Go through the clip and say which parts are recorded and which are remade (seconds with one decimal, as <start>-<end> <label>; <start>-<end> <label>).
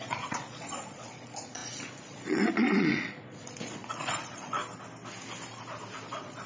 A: 0.0-4.6 remade; 4.6-6.1 recorded; 6.1-6.5 remade